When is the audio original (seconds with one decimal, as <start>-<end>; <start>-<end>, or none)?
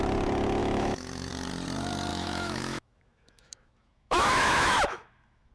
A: 0.0-0.6; 1.3-2.1